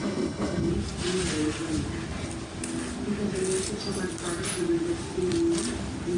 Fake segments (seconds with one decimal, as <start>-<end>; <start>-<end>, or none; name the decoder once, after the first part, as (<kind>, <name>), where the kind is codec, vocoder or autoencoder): 0.0-0.7 (codec, HILCodec)